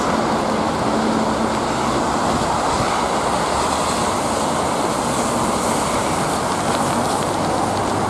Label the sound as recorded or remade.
recorded